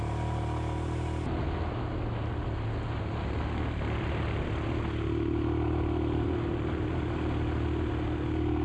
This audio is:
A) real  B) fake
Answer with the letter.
A